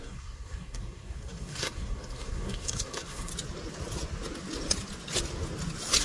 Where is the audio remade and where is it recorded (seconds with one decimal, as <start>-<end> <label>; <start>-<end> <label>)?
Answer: 0.0-3.3 remade; 3.3-6.0 recorded